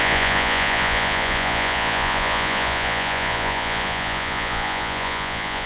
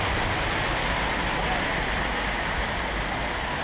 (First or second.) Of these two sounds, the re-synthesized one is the first